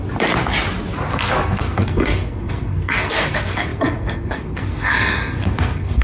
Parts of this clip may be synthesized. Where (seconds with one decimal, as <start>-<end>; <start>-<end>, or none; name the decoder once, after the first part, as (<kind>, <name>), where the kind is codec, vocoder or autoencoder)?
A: 1.1-6.0 (codec, SNAC)